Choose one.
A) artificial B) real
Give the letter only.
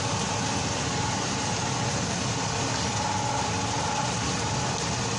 B